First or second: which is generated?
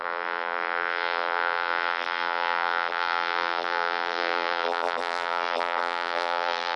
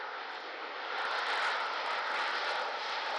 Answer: first